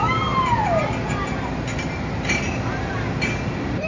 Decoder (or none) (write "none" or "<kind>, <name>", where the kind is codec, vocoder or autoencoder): none